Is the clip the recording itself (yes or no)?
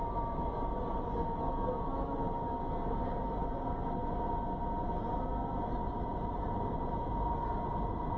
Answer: yes